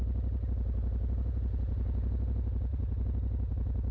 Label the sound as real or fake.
real